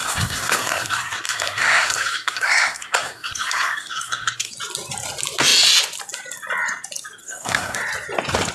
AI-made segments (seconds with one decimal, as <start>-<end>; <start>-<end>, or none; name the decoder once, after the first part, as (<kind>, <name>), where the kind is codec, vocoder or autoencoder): 0.0-4.5 (codec, SNAC); 7.2-7.8